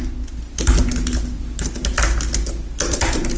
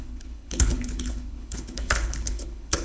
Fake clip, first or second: second